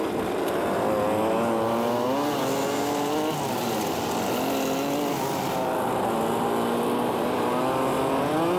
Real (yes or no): yes